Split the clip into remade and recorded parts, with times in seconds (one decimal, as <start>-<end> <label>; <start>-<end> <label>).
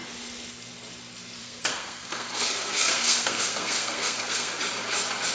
0.0-1.4 recorded; 1.4-4.6 remade; 4.6-5.3 recorded